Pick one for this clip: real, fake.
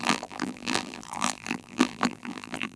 fake